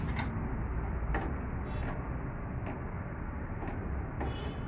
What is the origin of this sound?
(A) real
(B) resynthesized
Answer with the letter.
A